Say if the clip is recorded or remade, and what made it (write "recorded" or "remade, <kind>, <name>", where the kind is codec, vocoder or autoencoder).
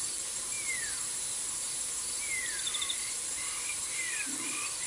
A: recorded